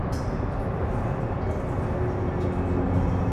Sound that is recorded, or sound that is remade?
recorded